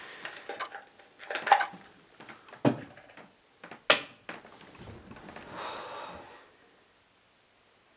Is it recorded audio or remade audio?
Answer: recorded